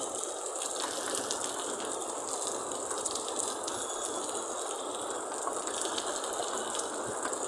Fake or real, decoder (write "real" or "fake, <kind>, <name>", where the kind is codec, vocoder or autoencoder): real